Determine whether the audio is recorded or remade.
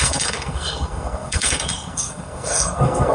remade